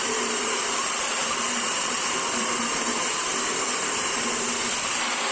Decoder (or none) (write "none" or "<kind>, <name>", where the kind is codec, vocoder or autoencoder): vocoder, BigVGAN v2